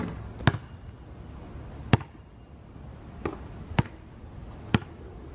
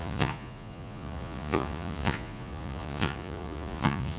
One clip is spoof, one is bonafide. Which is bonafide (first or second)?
first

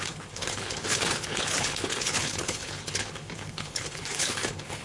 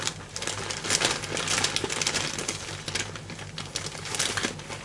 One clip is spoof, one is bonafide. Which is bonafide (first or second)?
second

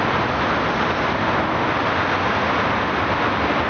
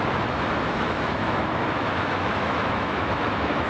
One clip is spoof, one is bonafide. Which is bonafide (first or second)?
first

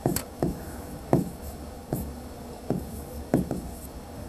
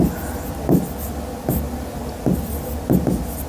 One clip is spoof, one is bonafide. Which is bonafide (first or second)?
second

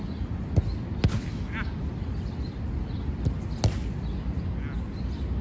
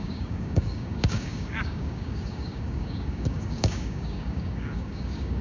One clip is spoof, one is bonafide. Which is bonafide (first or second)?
first